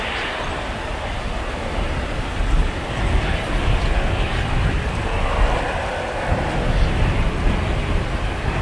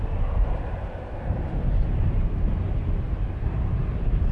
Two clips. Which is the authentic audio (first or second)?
first